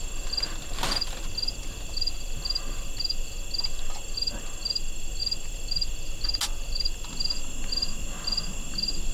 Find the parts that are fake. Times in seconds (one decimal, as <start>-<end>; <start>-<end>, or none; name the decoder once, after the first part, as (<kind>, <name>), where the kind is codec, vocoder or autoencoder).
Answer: none